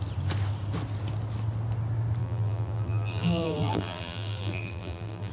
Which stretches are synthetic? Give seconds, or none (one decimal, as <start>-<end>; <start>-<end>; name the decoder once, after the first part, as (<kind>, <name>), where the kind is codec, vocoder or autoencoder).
2.2-5.3 (vocoder, BigVGAN v2)